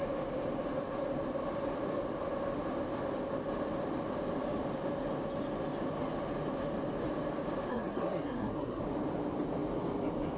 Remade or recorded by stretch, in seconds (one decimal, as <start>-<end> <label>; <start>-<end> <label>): 0.0-7.7 recorded; 7.7-8.8 remade; 8.8-10.4 recorded